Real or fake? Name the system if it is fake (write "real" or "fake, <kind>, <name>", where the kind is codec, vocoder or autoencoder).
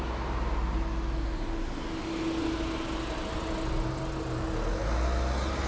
real